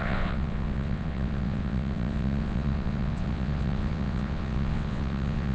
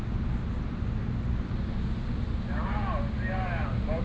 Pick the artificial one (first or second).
first